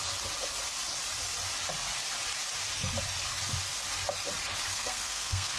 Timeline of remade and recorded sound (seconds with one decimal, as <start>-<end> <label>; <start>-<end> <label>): 0.0-4.7 recorded; 4.7-5.6 remade